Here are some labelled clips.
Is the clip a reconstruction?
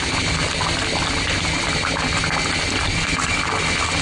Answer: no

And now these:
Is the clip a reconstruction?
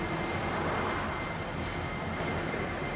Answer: no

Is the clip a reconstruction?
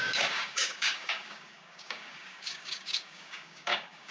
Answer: yes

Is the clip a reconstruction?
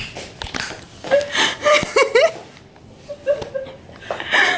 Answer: no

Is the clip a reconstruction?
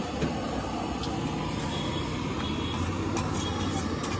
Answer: no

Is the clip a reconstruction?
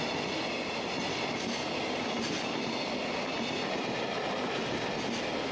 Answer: no